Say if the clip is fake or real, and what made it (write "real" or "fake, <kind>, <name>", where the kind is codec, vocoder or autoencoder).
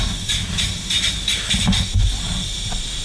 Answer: real